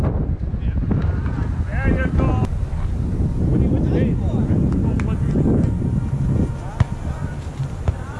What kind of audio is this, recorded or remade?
recorded